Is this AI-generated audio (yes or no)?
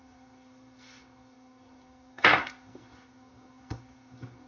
yes